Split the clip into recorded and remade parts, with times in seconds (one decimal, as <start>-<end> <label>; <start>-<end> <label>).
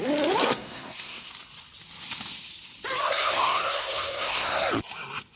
0.0-0.4 recorded; 0.4-1.3 remade; 1.3-3.0 recorded; 3.0-4.7 remade; 4.7-5.4 recorded